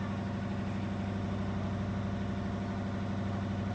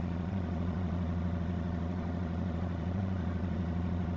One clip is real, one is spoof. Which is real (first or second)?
first